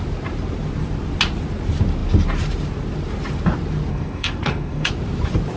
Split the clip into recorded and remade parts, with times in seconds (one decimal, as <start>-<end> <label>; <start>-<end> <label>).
0.0-3.9 recorded; 3.9-4.9 remade; 4.9-5.6 recorded